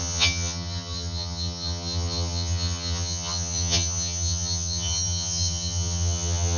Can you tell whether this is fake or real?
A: fake